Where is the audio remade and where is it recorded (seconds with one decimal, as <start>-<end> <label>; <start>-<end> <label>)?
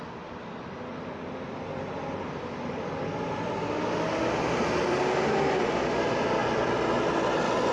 0.0-1.5 recorded; 1.5-5.0 remade; 5.0-7.7 recorded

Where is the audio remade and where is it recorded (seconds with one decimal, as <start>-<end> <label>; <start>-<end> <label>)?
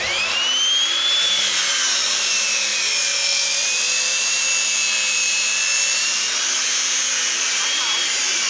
0.0-8.5 remade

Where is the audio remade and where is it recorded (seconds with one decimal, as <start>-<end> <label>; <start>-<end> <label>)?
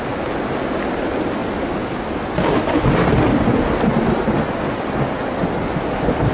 0.0-6.3 recorded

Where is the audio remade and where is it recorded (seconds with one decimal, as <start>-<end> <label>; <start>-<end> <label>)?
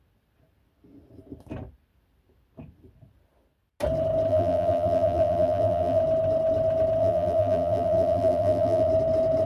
0.0-4.3 recorded; 4.3-6.0 remade; 6.0-7.0 recorded; 7.0-8.9 remade; 8.9-9.5 recorded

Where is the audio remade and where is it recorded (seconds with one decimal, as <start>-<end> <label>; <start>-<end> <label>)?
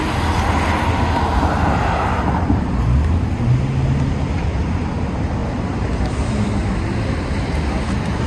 0.0-5.4 recorded; 5.4-8.3 remade